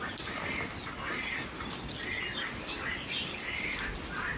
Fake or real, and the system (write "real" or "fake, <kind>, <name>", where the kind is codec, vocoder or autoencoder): real